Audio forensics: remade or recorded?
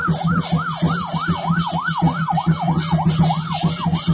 recorded